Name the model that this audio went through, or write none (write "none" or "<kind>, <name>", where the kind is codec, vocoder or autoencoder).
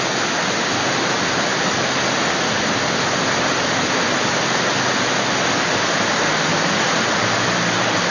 none